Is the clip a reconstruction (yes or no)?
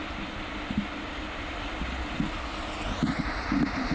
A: no